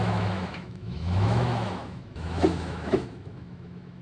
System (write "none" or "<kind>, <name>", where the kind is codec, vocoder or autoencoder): autoencoder, DAC-VAE